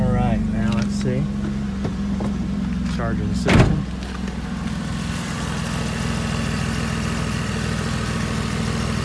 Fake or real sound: real